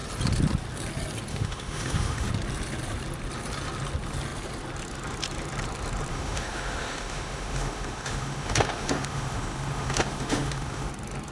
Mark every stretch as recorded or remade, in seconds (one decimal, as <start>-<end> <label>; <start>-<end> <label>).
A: 0.0-1.3 recorded; 1.3-2.3 remade; 2.3-6.1 recorded; 6.1-10.9 remade; 10.9-11.3 recorded